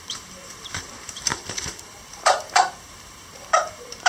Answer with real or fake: fake